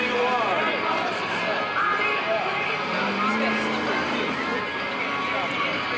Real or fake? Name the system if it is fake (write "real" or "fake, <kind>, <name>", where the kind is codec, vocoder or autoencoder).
real